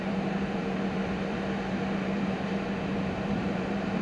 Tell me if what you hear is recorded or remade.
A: remade